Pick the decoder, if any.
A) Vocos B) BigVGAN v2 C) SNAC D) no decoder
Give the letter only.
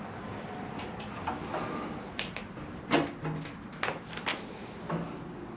D